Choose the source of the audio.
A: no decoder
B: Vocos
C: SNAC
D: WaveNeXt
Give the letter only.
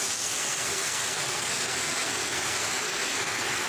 C